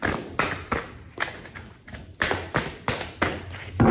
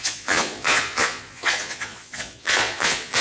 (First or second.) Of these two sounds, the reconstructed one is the second